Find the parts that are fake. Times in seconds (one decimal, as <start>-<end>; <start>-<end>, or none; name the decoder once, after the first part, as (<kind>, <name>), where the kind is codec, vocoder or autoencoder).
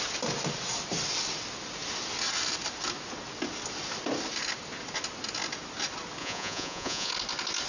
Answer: 6.2-7.1 (vocoder, Vocos)